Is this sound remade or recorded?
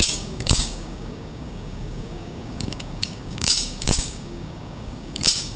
remade